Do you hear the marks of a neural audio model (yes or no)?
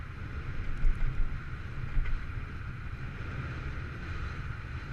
no